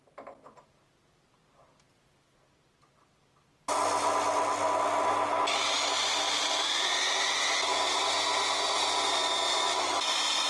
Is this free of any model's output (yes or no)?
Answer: yes